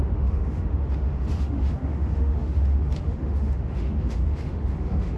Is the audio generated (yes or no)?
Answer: yes